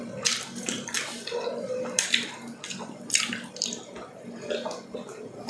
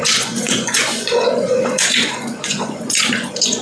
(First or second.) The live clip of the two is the first